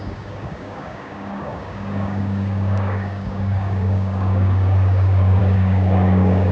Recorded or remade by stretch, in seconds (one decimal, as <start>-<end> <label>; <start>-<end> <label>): 0.0-6.5 remade